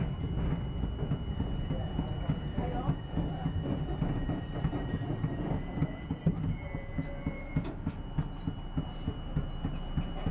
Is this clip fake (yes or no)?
no